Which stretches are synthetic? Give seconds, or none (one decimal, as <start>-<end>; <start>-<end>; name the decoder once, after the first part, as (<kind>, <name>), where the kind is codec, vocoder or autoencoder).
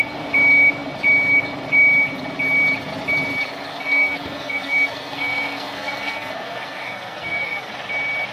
3.7-7.7 (codec, SNAC)